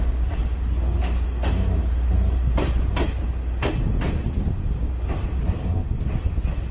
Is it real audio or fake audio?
real